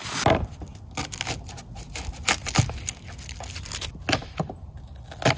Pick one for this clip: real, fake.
real